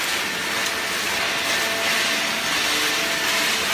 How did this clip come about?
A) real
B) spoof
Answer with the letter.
A